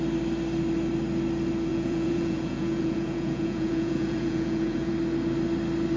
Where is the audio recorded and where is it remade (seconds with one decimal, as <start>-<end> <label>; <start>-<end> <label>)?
0.0-1.7 recorded; 1.7-4.9 remade; 4.9-6.0 recorded